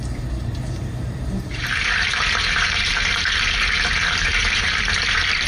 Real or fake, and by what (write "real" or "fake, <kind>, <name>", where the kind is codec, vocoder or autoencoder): fake, vocoder, BigVGAN v2